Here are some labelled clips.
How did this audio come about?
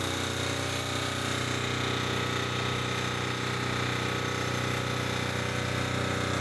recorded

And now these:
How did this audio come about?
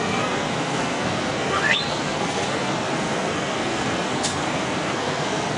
remade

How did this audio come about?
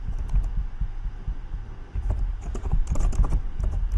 recorded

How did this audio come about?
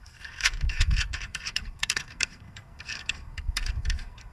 remade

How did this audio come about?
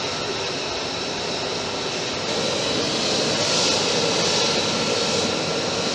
recorded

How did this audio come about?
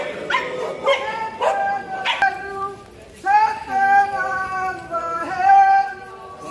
remade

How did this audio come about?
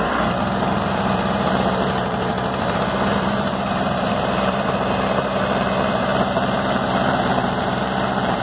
remade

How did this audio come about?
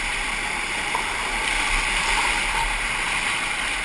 recorded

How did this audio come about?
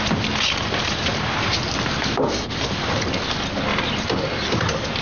recorded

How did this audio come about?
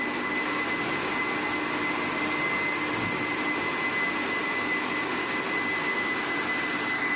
recorded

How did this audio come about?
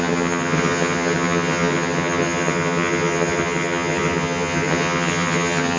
remade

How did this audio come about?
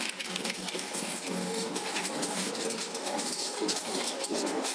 remade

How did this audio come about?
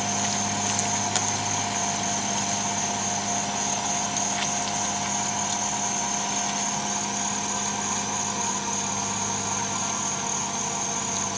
recorded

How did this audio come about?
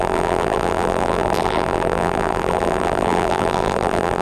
remade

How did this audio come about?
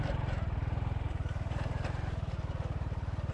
recorded